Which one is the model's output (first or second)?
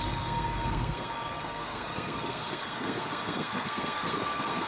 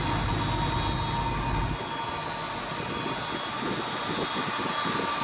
first